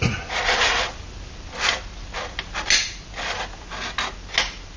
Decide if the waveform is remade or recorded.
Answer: recorded